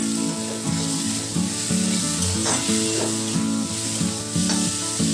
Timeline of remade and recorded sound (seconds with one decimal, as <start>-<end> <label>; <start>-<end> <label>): 0.0-5.1 recorded